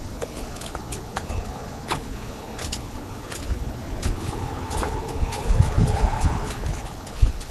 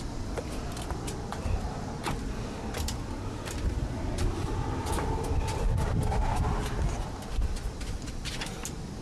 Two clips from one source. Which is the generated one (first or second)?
first